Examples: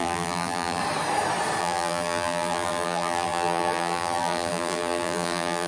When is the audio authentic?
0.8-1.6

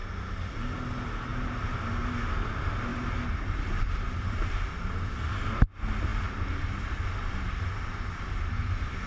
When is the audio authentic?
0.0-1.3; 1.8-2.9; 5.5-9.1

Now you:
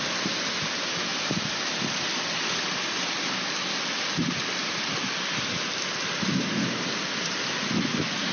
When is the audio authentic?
0.0-1.1; 2.0-4.6; 5.1-8.3

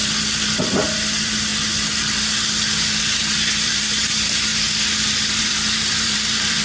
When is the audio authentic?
1.5-3.2; 4.5-5.4

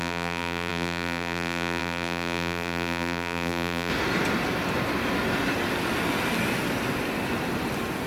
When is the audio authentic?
3.9-8.1

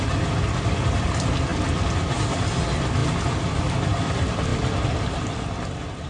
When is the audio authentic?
3.0-3.6; 4.5-5.1

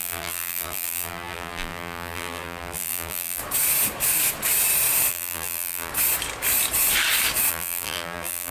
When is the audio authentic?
3.4-5.1; 5.9-7.5